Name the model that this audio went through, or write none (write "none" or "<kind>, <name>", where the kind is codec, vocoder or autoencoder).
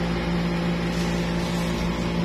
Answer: none